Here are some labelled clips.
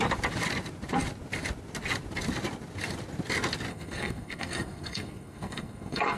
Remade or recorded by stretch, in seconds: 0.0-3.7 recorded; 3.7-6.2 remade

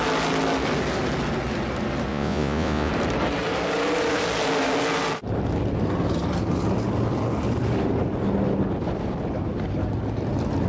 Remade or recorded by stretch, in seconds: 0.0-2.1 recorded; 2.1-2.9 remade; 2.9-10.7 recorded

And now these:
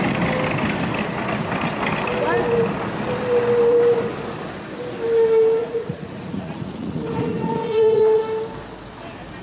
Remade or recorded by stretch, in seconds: 0.0-5.6 recorded; 5.6-8.2 remade; 8.2-9.4 recorded

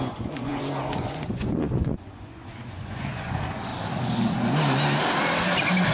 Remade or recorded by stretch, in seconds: 0.0-3.7 remade; 3.7-5.9 recorded

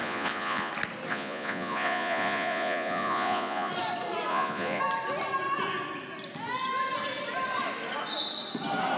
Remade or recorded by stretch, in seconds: 0.0-0.7 remade; 0.7-1.1 recorded; 1.1-3.7 remade; 3.7-4.3 recorded; 4.3-4.8 remade; 4.8-9.0 recorded